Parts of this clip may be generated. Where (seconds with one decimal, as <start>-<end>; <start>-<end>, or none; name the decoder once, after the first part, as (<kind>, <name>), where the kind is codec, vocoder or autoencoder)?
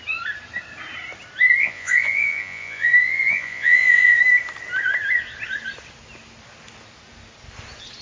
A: 1.6-4.2 (vocoder, Vocos)